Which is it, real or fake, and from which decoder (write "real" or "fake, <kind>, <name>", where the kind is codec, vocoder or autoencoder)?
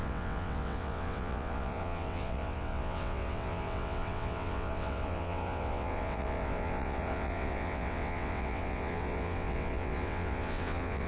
fake, vocoder, WaveNeXt